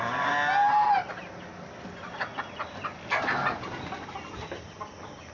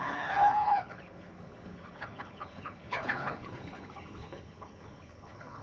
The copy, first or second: second